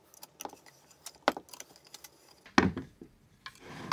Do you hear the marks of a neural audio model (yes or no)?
no